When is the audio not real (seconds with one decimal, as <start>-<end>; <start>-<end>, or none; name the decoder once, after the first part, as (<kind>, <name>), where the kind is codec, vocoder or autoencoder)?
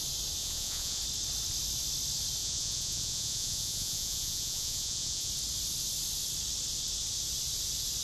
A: 0.4-1.0 (vocoder, Vocos); 2.4-5.3